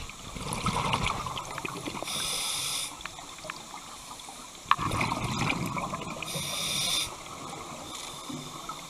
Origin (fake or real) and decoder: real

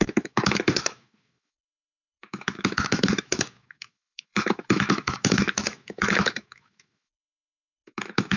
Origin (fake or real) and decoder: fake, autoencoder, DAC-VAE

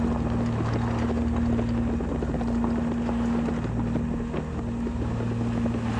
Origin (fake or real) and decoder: real